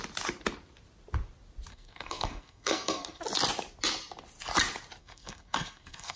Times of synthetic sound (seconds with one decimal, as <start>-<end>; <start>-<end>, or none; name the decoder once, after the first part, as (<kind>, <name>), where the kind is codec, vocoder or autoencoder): 1.7-3.2 (codec, SNAC); 5.0-6.2

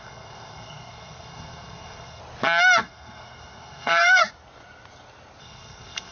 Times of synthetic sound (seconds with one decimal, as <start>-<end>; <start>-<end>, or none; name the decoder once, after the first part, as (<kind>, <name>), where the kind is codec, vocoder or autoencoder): 0.0-2.2 (codec, SNAC); 2.8-4.2; 5.4-6.1

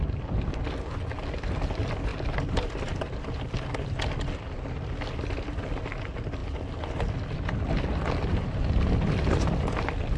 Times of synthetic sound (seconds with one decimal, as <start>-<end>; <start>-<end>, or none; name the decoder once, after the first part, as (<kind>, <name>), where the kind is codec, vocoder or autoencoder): 2.1-3.3 (vocoder, BigVGAN v2); 8.3-8.9

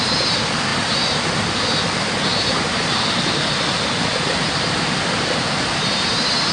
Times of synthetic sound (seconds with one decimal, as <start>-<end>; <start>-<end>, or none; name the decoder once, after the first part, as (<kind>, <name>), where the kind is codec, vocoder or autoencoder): none

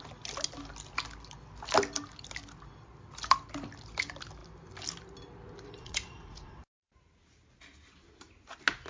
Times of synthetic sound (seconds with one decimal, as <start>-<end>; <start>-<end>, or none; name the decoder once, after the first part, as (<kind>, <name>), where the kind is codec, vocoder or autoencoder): 5.8-6.6 (vocoder, Vocos)

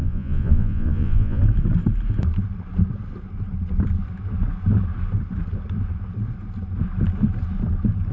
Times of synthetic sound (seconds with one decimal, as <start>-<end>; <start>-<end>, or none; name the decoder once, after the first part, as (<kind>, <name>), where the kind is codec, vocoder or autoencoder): 0.0-1.4 (vocoder, Vocos)

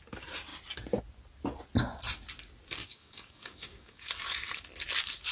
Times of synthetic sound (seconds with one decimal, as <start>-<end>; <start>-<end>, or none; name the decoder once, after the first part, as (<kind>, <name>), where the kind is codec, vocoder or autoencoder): 2.8-4.1 (codec, DAC)

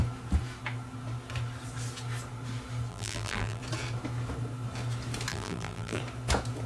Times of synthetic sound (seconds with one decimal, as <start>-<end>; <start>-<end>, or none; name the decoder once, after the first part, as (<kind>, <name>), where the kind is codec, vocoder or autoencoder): 2.9-3.6 (vocoder, BigVGAN v2); 5.3-6.0